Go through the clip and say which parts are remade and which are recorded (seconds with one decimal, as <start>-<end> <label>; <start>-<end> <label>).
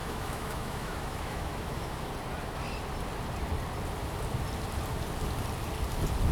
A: 0.0-2.1 remade; 2.1-6.3 recorded